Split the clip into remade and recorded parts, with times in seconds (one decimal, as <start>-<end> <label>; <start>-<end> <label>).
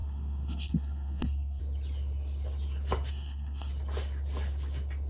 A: 0.0-1.6 remade; 1.6-3.1 recorded; 3.1-3.7 remade; 3.7-5.1 recorded